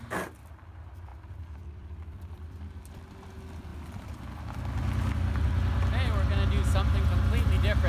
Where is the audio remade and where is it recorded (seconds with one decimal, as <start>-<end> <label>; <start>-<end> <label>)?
0.0-1.1 recorded; 1.1-3.3 remade; 3.3-3.7 recorded; 3.7-4.4 remade; 4.4-7.9 recorded